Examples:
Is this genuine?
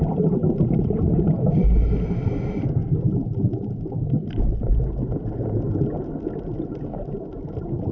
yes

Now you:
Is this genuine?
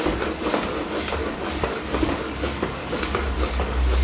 no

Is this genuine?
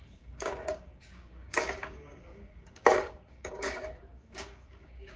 no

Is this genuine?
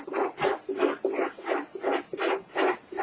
yes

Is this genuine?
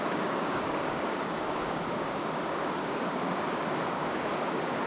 no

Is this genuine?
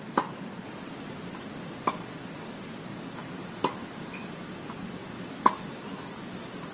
yes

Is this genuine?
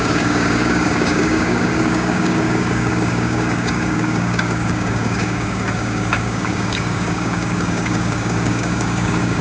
no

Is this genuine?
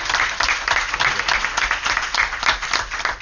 yes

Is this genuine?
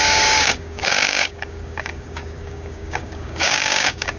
no